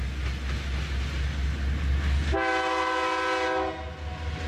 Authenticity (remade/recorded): recorded